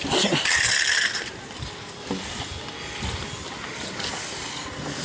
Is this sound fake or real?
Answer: real